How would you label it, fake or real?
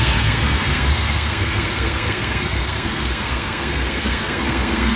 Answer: fake